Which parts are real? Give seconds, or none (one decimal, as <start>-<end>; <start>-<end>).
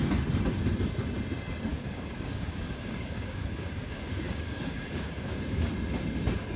0.0-1.7; 5.7-6.6